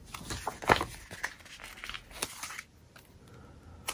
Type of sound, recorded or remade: recorded